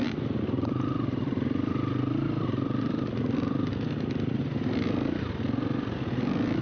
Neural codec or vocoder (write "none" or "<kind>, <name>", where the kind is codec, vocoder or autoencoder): vocoder, BigVGAN v2